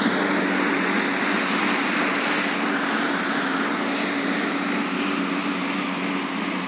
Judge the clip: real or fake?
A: real